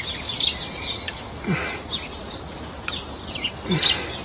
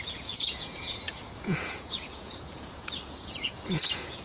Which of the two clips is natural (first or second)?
first